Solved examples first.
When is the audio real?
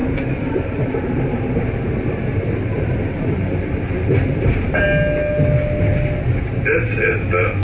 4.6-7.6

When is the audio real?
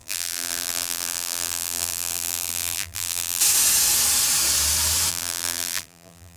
3.4-5.1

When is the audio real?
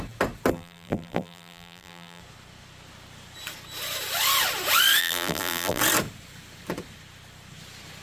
0.0-0.5; 2.2-5.0; 5.8-8.0